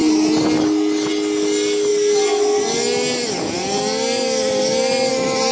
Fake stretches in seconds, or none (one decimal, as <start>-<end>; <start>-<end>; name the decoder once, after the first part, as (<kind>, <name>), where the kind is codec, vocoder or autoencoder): none